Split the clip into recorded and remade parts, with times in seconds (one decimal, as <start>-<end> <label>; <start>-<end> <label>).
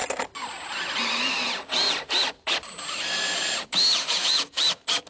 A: 0.0-4.0 recorded; 4.0-4.6 remade; 4.6-5.1 recorded